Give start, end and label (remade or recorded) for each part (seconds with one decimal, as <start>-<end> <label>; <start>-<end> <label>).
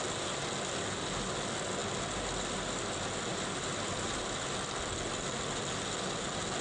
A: 0.0-6.6 recorded